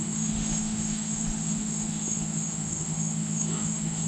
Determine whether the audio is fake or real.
fake